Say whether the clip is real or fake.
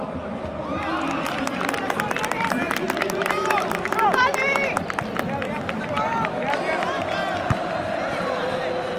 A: real